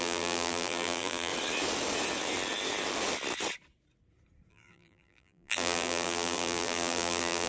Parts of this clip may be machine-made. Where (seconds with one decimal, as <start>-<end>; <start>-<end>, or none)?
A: 0.0-1.3; 4.5-7.5